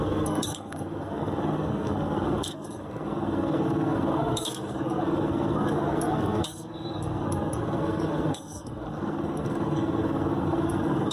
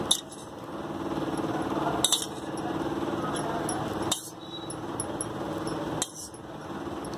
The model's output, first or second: first